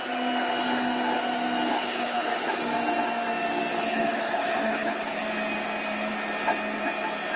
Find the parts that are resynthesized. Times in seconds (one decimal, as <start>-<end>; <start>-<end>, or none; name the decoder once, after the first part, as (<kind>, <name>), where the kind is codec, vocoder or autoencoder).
1.7-2.6 (codec, HILCodec); 3.7-5.2